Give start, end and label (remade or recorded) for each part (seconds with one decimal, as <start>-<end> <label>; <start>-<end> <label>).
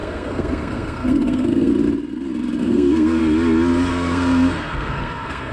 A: 0.0-1.7 remade; 1.7-2.6 recorded; 2.6-3.2 remade; 3.2-3.9 recorded; 3.9-5.5 remade